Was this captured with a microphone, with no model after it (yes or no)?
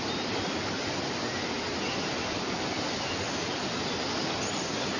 yes